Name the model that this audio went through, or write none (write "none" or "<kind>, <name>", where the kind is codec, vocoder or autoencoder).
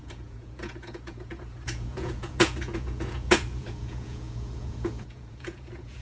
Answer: vocoder, Vocos